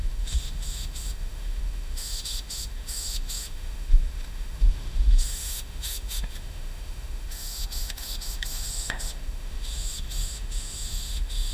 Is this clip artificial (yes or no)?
yes